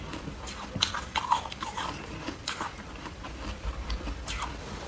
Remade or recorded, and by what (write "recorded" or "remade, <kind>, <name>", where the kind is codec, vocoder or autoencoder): remade, vocoder, BigVGAN v2